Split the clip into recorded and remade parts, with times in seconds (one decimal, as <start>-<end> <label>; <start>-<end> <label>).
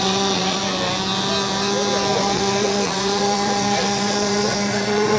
0.0-0.6 remade; 0.6-2.2 recorded; 2.2-5.2 remade